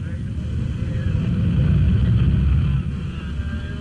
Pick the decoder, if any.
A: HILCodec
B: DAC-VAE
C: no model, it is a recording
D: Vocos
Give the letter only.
C